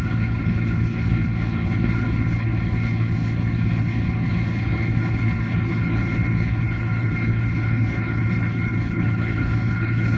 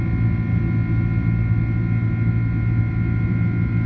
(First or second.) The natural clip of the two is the second